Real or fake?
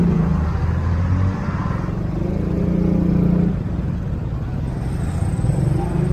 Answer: real